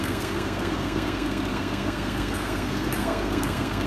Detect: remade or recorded remade